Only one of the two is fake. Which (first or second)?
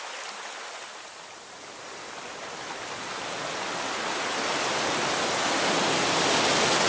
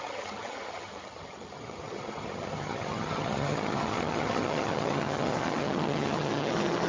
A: second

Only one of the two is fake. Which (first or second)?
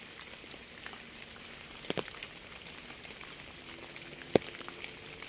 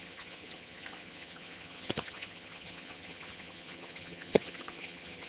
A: second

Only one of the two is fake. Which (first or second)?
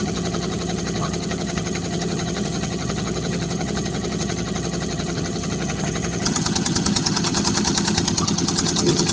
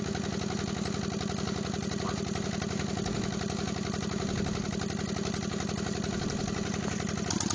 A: first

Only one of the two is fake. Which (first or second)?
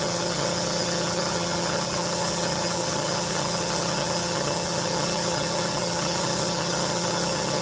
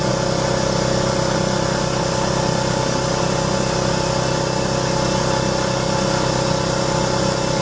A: first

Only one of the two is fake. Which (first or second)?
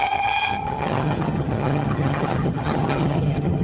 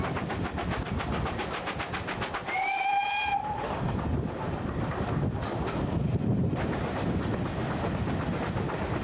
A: first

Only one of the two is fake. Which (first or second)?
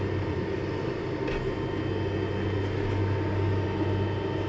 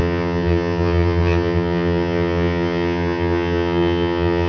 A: second